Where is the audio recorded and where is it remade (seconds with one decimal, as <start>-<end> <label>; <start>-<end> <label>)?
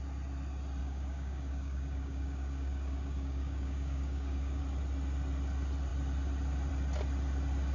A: 0.0-0.8 recorded; 0.8-4.6 remade; 4.6-7.7 recorded